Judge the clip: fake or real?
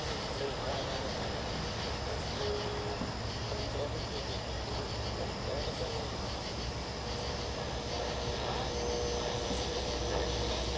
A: real